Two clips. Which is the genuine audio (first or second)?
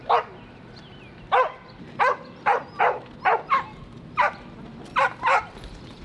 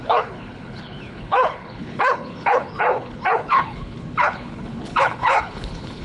first